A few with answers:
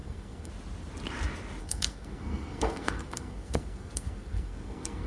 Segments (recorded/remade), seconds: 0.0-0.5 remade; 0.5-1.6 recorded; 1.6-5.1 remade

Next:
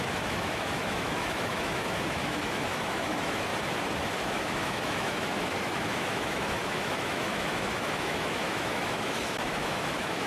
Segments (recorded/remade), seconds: 0.0-3.5 remade; 3.5-4.2 recorded; 4.2-10.3 remade

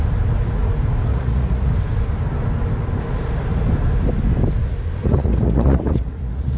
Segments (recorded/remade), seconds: 0.0-1.1 recorded; 1.1-1.7 remade; 1.7-5.0 recorded; 5.0-6.6 remade

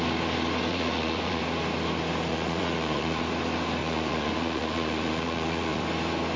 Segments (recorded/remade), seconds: 0.0-0.7 recorded; 0.7-1.4 remade; 1.4-2.3 recorded; 2.3-3.2 remade; 3.2-3.8 recorded; 3.8-5.8 remade; 5.8-6.4 recorded